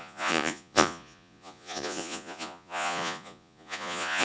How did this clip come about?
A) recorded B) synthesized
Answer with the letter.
B